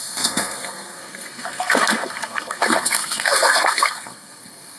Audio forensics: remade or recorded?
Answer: remade